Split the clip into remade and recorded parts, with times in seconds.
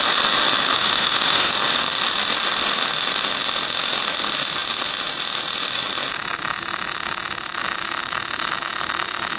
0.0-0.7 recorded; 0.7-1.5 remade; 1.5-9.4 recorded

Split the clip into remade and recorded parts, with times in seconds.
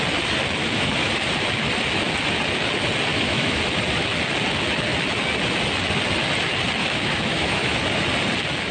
0.0-0.6 recorded; 0.6-1.1 remade; 1.1-3.1 recorded; 3.1-3.6 remade; 3.6-6.8 recorded; 6.8-7.8 remade; 7.8-8.7 recorded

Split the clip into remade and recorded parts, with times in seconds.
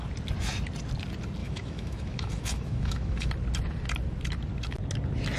0.0-1.4 recorded; 1.4-3.3 remade; 3.3-5.4 recorded